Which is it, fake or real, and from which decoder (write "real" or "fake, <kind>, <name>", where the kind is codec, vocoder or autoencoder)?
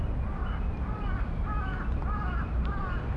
real